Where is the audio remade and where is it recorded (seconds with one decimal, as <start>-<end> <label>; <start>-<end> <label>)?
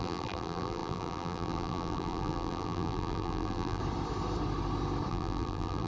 0.0-3.8 remade; 3.8-5.1 recorded; 5.1-5.9 remade